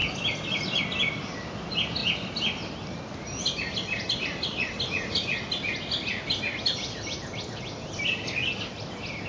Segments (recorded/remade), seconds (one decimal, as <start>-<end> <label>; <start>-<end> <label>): 0.0-9.3 recorded